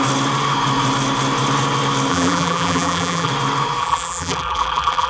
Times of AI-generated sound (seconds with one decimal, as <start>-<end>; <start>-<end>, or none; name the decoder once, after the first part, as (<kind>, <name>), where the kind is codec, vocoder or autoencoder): 2.1-3.3 (vocoder, BigVGAN v2); 3.8-5.1